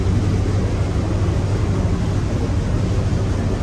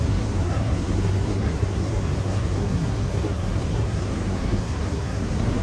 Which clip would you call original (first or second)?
first